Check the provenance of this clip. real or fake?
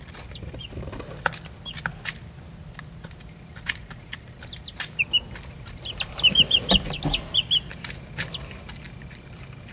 real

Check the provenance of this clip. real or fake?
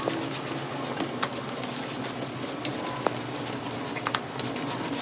real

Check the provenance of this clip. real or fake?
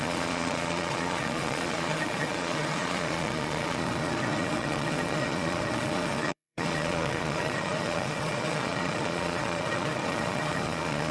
fake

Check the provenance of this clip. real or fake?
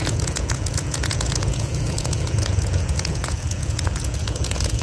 fake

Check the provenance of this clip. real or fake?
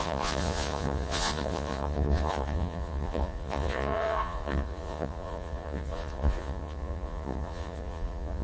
fake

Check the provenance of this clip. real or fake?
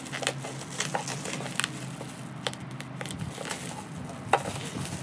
real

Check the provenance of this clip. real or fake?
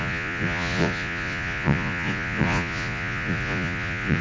fake